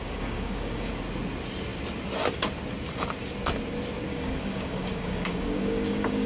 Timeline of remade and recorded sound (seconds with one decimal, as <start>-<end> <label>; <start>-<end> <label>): 0.0-0.9 remade; 0.9-4.1 recorded; 4.1-6.3 remade